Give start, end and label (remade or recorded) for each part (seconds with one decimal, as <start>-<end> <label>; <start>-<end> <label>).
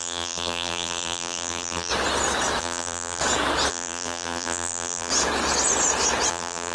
0.0-1.9 remade; 1.9-2.6 recorded; 2.6-3.2 remade; 3.2-3.7 recorded; 3.7-5.1 remade; 5.1-6.3 recorded; 6.3-6.7 remade